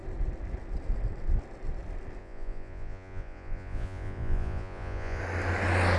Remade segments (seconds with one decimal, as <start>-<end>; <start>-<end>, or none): 2.2-5.2